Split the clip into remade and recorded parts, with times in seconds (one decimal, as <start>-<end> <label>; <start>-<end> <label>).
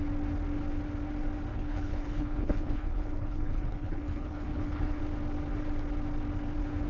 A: 0.0-1.5 recorded; 1.5-5.0 remade; 5.0-6.9 recorded